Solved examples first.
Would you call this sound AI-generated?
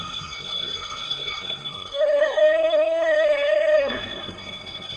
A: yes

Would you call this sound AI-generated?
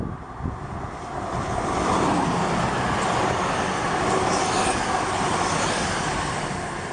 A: no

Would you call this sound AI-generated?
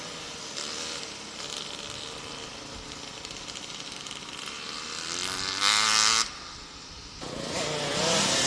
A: no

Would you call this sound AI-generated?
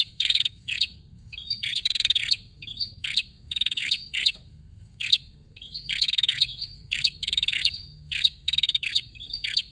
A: yes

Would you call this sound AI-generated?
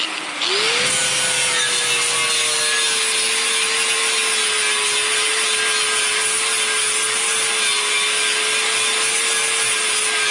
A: no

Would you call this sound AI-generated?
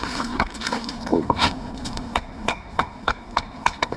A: yes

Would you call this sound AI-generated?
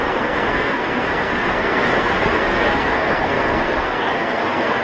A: yes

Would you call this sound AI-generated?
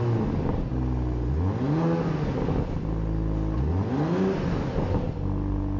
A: no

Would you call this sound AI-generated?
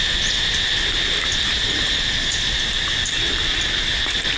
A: no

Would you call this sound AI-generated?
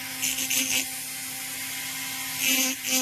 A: no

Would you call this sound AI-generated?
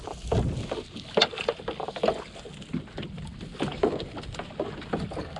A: no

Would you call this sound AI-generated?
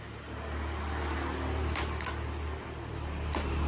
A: no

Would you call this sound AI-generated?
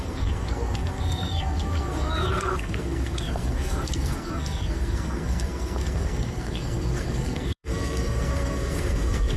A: yes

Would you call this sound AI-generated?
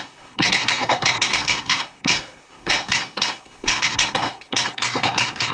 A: yes